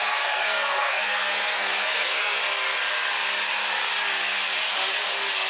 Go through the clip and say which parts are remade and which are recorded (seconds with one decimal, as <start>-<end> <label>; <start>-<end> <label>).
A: 0.0-2.4 remade; 2.4-5.5 recorded